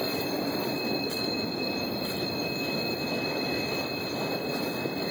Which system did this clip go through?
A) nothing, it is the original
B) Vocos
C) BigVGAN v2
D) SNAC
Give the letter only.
A